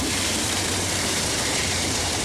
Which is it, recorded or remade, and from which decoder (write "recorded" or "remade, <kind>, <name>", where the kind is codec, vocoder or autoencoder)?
remade, vocoder, BigVGAN v2